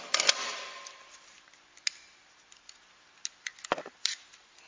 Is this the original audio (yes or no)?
yes